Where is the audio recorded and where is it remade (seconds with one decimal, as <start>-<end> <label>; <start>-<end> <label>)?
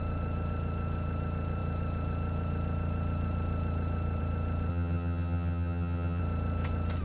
0.0-4.7 recorded; 4.7-6.2 remade; 6.2-7.0 recorded